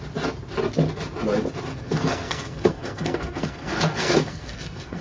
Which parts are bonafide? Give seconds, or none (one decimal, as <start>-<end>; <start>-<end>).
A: 0.0-1.7

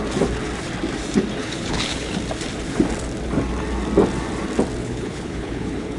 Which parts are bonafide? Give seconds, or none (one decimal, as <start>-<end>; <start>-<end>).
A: 0.0-1.4; 2.1-4.8